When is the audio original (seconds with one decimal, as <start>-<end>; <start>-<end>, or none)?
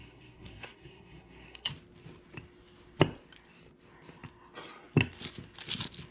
1.7-6.1